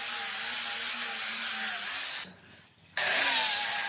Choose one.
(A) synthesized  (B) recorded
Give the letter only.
B